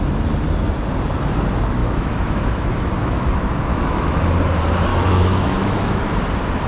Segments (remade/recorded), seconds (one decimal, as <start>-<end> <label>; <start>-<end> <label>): 0.0-1.8 recorded; 1.8-3.3 remade; 3.3-3.7 recorded; 3.7-4.2 remade; 4.2-4.9 recorded; 4.9-6.0 remade; 6.0-6.7 recorded